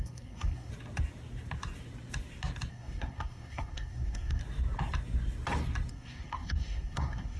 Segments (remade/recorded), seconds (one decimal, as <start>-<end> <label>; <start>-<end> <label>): 0.0-0.7 remade; 0.7-2.7 recorded; 2.7-4.4 remade; 4.4-5.9 recorded; 5.9-7.4 remade